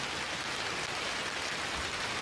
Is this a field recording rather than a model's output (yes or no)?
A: yes